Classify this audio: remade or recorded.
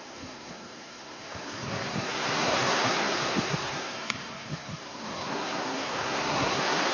remade